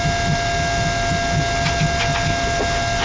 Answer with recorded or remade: recorded